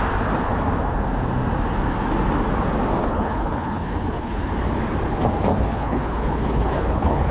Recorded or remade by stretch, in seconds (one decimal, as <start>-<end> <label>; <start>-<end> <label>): 0.0-3.0 recorded; 3.0-4.5 remade; 4.5-5.5 recorded; 5.5-7.3 remade